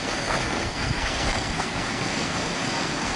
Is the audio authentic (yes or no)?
no